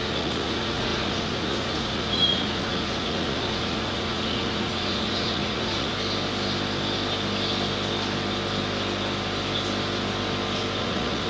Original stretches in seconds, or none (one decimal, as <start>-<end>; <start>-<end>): 5.9-10.8